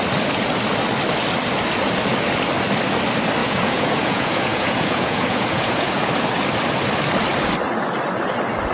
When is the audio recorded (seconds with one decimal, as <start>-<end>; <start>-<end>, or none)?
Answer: 0.0-3.4; 6.1-8.7